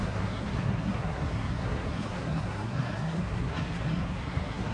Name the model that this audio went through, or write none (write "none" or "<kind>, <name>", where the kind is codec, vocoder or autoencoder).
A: codec, SNAC